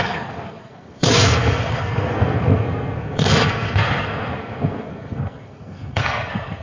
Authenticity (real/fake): fake